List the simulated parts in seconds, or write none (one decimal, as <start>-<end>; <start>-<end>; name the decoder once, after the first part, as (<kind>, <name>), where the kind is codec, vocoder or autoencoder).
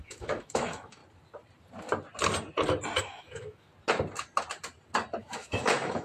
0.0-1.0 (autoencoder, DAC-VAE); 3.0-3.7; 5.2-6.0